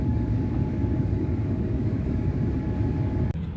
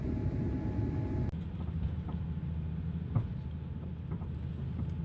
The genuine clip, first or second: second